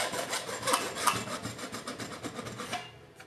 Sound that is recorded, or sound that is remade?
recorded